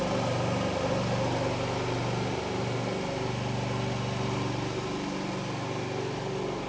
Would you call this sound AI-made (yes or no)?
no